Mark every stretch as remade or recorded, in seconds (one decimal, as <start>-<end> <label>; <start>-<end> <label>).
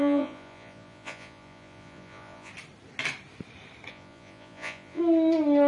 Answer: 0.0-2.5 remade; 2.5-3.9 recorded; 3.9-5.0 remade; 5.0-5.7 recorded